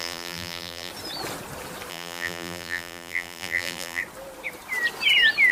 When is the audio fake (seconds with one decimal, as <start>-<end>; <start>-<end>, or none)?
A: 0.0-0.9; 1.9-4.0